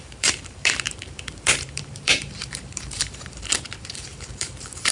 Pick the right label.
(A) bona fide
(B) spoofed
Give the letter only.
B